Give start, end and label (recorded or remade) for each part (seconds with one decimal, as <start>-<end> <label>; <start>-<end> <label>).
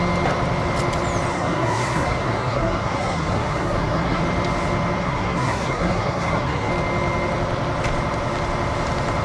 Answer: 0.0-1.3 recorded; 1.3-4.2 remade; 4.2-5.0 recorded; 5.0-6.7 remade; 6.7-9.2 recorded